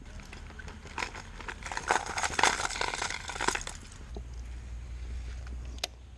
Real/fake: real